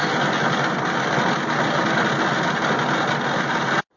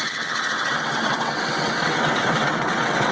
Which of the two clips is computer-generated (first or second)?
second